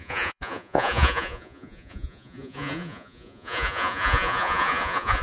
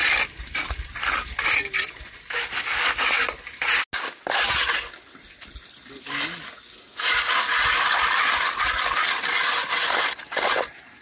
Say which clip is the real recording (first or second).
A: second